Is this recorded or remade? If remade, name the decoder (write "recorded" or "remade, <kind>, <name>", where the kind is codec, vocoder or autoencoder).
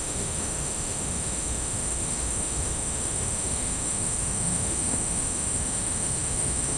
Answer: remade, autoencoder, DAC-VAE